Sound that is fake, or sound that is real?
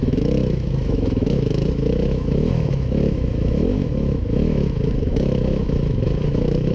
fake